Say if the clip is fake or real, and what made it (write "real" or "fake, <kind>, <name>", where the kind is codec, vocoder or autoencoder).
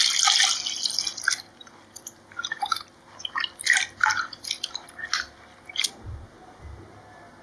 real